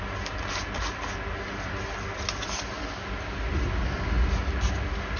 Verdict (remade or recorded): recorded